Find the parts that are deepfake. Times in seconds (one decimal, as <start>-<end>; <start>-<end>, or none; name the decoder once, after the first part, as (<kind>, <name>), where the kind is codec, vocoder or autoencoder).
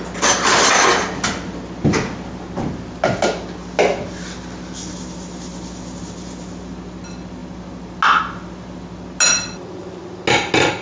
none